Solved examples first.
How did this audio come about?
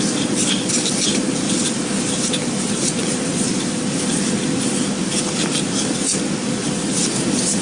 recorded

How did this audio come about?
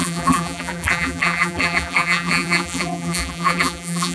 remade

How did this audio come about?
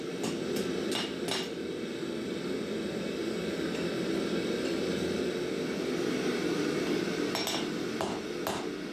recorded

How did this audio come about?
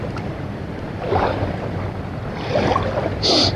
remade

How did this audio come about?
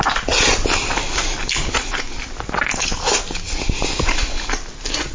recorded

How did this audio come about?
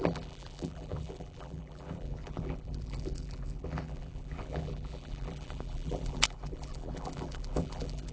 remade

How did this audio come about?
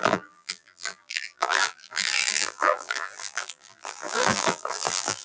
remade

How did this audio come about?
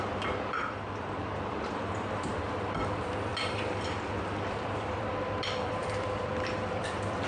remade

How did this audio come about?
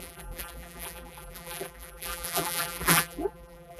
remade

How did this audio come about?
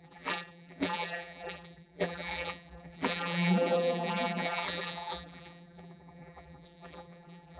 remade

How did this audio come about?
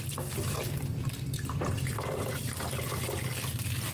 recorded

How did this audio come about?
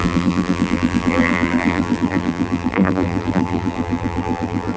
remade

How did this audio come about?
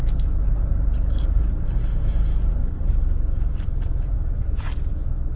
remade